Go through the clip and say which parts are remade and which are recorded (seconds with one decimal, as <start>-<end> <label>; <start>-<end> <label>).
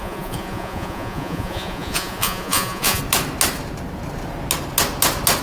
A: 0.0-3.0 remade; 3.0-5.4 recorded